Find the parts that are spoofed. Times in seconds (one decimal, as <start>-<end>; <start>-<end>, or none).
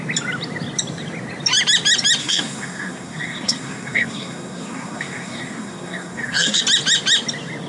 2.2-6.6